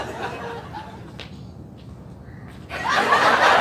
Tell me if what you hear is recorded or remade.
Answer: recorded